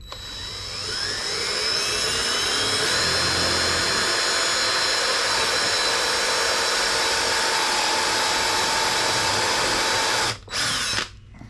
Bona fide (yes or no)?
yes